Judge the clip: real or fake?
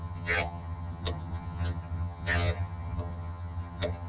fake